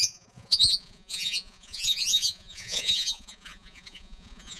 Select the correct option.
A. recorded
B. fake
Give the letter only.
B